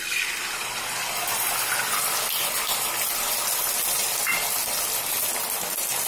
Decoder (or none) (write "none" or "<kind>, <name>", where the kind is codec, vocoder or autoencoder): none